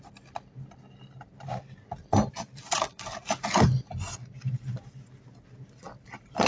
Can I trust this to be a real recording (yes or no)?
yes